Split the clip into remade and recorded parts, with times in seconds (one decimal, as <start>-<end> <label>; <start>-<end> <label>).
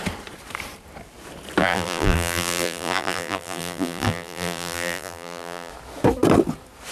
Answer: 0.0-1.6 recorded; 1.6-5.7 remade; 5.7-6.9 recorded